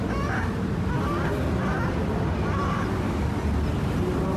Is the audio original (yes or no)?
yes